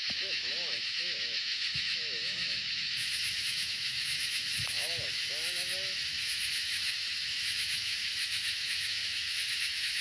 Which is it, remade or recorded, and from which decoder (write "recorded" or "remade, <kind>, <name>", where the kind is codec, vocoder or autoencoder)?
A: remade, autoencoder, DAC-VAE